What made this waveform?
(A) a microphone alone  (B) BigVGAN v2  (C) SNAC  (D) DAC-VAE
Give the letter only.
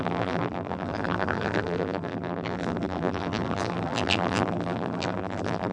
B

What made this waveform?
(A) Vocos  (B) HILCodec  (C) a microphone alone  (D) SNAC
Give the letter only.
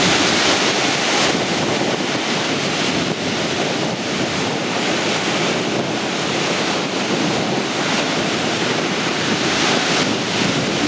C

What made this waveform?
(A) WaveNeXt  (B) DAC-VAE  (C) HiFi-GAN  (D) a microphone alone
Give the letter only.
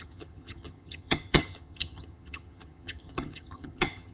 C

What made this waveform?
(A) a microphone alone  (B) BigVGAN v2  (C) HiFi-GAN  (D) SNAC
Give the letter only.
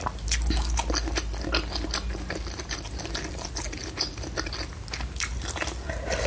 A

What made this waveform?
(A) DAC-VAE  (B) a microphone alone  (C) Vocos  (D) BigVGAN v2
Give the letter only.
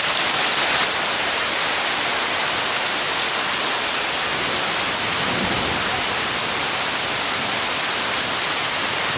B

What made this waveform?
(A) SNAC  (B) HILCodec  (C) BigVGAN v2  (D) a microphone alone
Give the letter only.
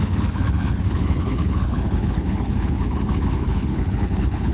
B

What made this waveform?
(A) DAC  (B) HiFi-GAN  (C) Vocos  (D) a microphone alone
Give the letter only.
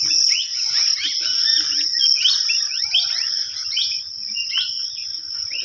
D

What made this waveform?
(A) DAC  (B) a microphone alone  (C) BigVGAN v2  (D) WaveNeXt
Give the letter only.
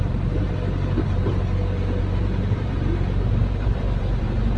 C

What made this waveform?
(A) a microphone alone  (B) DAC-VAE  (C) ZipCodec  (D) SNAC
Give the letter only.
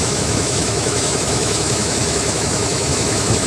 B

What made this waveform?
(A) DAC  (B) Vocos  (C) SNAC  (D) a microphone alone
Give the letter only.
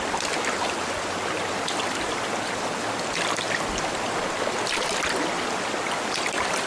D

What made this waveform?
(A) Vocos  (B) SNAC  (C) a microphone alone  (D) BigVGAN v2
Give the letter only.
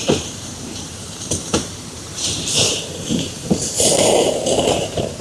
D